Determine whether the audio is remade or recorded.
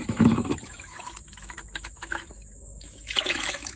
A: remade